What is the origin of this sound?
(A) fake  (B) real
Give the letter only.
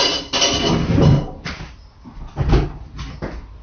B